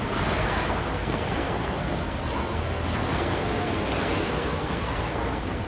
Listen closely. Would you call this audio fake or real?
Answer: fake